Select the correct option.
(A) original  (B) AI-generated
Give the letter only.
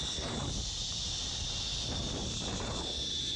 A